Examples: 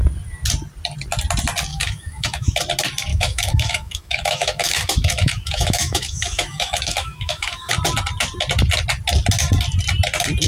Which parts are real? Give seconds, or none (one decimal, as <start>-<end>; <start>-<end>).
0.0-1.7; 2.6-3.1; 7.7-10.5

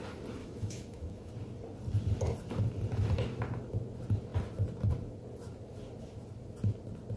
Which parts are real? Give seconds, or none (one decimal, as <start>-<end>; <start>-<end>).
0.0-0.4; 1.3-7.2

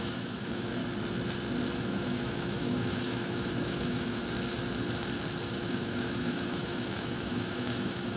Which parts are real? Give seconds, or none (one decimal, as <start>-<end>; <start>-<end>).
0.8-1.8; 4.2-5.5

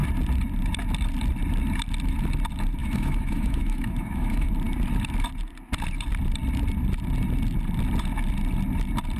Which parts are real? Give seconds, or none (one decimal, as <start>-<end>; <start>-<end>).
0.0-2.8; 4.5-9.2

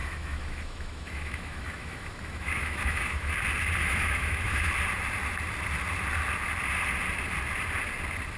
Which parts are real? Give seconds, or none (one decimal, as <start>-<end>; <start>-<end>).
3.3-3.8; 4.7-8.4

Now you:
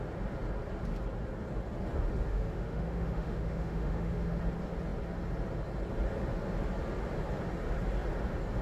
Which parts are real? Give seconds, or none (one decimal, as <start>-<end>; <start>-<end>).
0.0-2.3; 4.4-8.6